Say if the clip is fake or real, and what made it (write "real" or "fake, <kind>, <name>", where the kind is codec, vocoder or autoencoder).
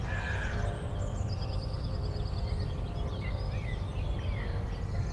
real